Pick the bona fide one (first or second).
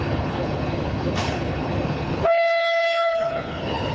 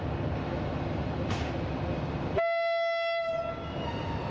second